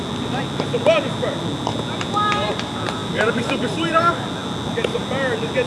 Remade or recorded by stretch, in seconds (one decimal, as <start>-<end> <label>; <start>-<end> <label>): 0.0-1.7 remade; 1.7-2.5 recorded; 2.5-5.7 remade